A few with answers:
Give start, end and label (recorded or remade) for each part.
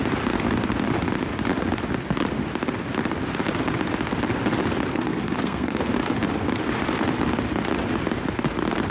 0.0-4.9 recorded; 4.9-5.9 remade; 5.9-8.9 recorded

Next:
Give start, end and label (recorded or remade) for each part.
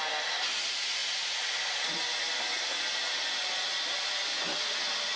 0.0-5.2 recorded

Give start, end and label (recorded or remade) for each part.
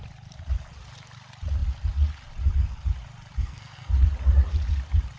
0.0-3.4 recorded; 3.4-3.9 remade; 3.9-5.2 recorded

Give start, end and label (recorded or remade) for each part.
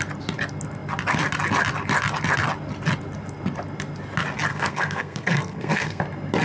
0.0-4.5 recorded; 4.5-6.0 remade; 6.0-6.4 recorded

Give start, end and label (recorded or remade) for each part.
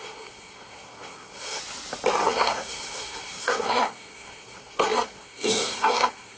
0.0-1.6 remade; 1.6-2.2 recorded; 2.2-6.4 remade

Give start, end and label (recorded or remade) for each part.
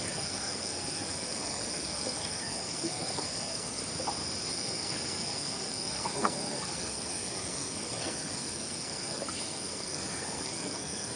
0.0-3.8 remade; 3.8-4.5 recorded; 4.5-11.2 remade